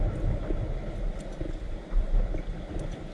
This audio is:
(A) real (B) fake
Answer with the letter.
A